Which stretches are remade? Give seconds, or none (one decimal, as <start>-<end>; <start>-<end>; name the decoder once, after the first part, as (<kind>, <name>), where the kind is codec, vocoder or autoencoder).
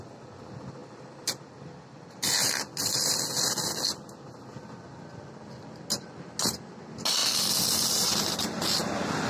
7.2-8.4 (vocoder, BigVGAN v2)